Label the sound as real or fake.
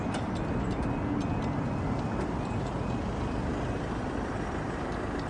real